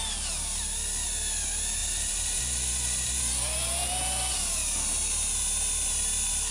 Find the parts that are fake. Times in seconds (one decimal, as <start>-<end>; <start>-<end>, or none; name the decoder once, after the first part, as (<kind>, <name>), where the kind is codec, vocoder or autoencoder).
1.8-3.9 (vocoder, BigVGAN v2)